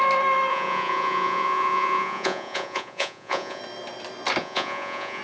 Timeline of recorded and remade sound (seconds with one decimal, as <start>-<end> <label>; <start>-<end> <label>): 0.0-0.5 recorded; 0.5-3.6 remade; 3.6-4.4 recorded; 4.4-5.2 remade